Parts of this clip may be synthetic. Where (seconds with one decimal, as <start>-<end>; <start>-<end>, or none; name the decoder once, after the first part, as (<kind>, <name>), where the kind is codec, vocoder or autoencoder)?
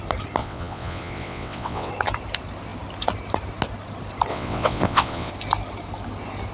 0.4-1.9 (vocoder, WaveNeXt); 4.3-5.3